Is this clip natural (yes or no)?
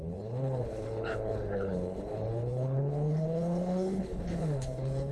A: no